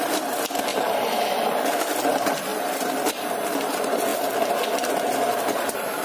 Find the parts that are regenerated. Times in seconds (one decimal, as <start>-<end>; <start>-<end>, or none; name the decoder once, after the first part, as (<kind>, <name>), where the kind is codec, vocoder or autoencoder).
0.7-1.8 (vocoder, BigVGAN v2); 2.5-3.2